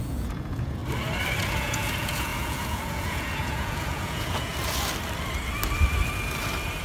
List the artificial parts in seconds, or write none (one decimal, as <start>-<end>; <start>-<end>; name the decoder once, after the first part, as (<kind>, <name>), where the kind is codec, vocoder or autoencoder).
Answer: 0.0-0.8 (vocoder, Vocos); 1.5-4.5